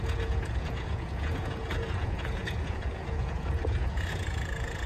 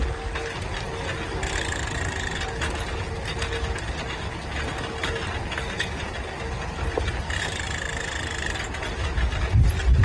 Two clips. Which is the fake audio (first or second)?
first